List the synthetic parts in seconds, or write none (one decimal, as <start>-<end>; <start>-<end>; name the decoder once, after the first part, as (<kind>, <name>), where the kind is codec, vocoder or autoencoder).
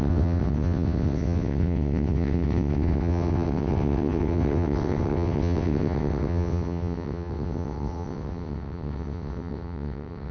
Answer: 0.0-10.3 (vocoder, WaveNeXt)